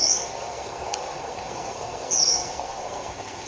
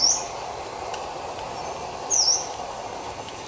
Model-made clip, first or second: first